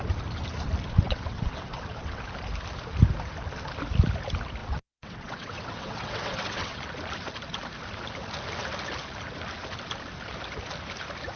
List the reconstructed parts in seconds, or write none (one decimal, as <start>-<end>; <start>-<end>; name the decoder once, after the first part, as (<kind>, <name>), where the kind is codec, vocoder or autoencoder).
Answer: 0.9-2.2 (vocoder, WaveNeXt); 4.6-6.8